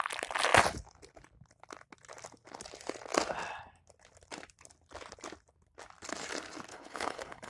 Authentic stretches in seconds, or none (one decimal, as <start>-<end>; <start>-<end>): 0.0-6.7